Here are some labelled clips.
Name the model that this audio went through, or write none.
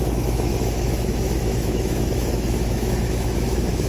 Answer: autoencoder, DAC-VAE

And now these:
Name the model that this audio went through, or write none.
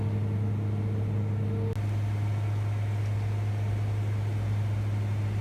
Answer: none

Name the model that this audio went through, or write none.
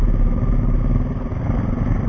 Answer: none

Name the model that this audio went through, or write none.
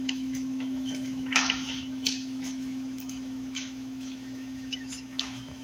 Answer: autoencoder, DAC-VAE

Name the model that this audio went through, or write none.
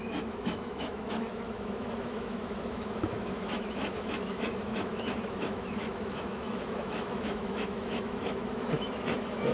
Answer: autoencoder, DAC-VAE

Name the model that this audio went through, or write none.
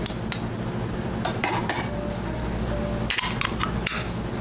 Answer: none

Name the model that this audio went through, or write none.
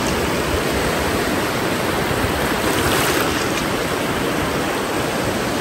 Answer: none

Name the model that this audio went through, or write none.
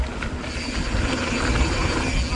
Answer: none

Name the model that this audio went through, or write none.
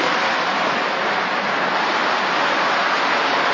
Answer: none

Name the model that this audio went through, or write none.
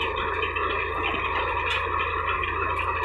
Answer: none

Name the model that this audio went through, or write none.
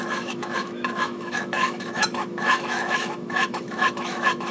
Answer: autoencoder, DAC-VAE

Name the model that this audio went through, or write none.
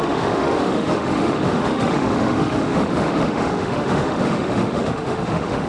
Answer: autoencoder, DAC-VAE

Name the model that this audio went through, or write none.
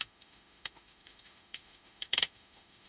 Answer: autoencoder, DAC-VAE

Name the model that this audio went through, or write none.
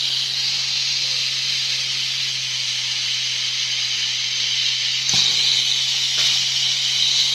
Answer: none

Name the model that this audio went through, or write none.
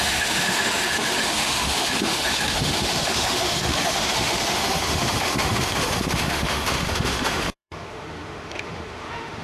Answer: autoencoder, DAC-VAE